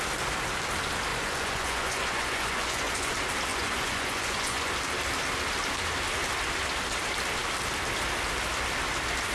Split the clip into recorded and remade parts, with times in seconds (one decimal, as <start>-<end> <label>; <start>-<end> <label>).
0.0-1.1 recorded; 1.1-3.1 remade; 3.1-3.5 recorded; 3.5-4.7 remade; 4.7-9.3 recorded